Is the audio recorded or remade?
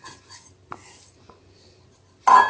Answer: recorded